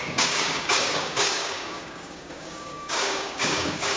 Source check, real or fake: fake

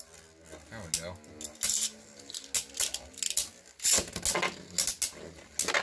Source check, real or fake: real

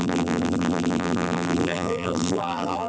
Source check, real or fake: fake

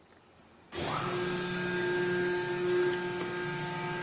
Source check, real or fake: real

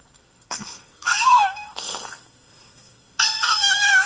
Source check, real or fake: fake